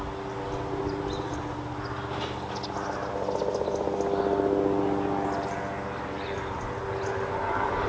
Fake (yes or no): no